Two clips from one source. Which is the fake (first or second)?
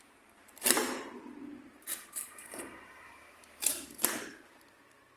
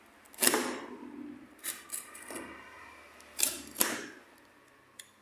first